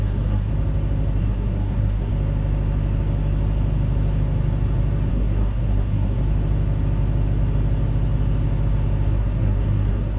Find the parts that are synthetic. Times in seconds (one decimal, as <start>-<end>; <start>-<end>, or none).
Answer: 0.0-0.5; 1.2-2.1; 5.1-6.2; 9.1-10.2